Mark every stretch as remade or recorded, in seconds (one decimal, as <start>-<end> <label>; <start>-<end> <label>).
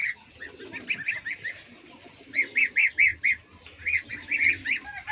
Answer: 0.0-5.1 recorded